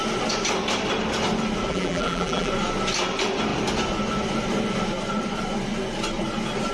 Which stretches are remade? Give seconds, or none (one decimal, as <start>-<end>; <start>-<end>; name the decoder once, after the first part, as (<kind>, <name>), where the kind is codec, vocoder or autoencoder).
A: 1.7-2.5 (vocoder, BigVGAN v2)